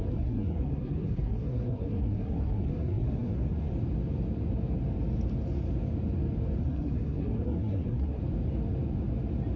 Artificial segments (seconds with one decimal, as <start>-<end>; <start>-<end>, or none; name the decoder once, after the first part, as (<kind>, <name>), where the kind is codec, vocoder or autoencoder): 0.0-3.7 (codec, SNAC); 6.6-8.2